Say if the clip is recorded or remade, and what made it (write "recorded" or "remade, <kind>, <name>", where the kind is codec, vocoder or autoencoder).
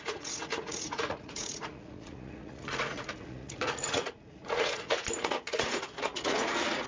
remade, vocoder, Vocos